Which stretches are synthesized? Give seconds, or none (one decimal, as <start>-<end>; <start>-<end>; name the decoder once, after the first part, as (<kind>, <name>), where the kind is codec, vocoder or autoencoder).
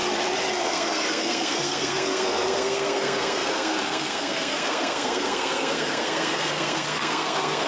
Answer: 0.6-7.7 (codec, SNAC)